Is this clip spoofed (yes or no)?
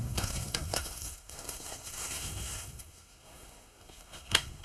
yes